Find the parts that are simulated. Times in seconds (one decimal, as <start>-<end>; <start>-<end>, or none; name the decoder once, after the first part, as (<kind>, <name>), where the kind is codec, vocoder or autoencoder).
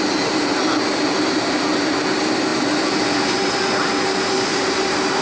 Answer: none